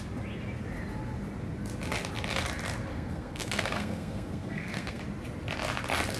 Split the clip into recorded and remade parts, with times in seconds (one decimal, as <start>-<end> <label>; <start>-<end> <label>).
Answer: 0.0-2.9 recorded; 2.9-5.0 remade; 5.0-6.2 recorded